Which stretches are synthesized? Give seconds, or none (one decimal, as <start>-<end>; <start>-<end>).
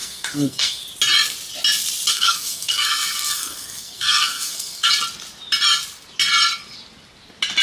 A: 0.0-0.8; 2.1-4.9